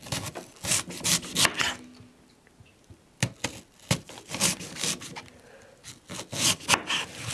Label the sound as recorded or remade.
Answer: recorded